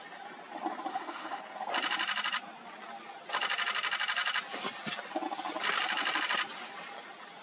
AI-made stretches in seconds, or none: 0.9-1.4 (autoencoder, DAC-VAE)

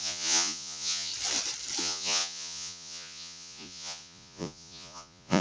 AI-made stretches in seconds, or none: 0.0-1.1 (vocoder, Vocos); 1.8-5.4